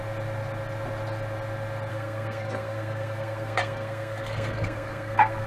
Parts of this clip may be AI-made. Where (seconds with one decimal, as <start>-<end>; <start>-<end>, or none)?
1.9-5.5